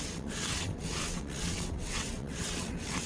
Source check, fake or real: fake